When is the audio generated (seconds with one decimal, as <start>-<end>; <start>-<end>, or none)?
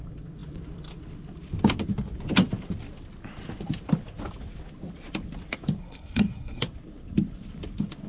5.8-6.6